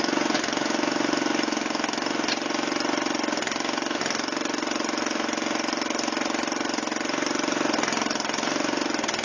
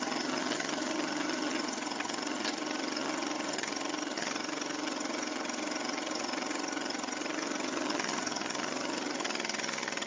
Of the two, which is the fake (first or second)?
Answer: second